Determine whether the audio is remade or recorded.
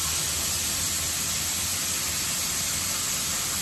recorded